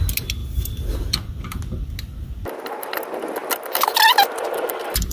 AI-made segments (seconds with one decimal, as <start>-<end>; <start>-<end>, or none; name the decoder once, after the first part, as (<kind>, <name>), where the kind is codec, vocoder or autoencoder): 0.4-1.6 (vocoder, BigVGAN v2); 3.4-5.1